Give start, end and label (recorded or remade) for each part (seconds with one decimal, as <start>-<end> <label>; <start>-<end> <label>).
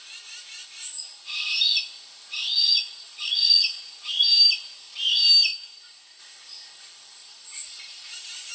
0.0-2.5 recorded; 2.5-3.6 remade; 3.6-5.5 recorded; 5.5-6.2 remade; 6.2-7.2 recorded; 7.2-8.5 remade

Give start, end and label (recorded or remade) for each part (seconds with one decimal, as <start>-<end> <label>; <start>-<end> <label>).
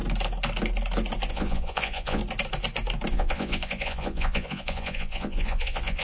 0.0-1.3 recorded; 1.3-2.2 remade; 2.2-3.1 recorded; 3.1-6.0 remade